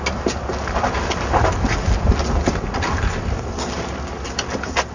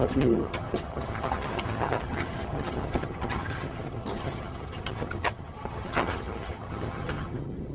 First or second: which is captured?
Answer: first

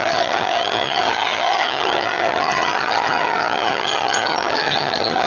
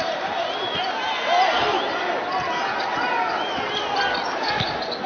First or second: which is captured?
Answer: second